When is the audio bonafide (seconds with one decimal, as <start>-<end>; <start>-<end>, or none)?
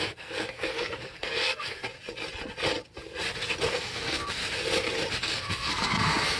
1.8-3.7; 4.4-5.2